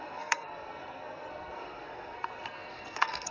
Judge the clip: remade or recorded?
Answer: remade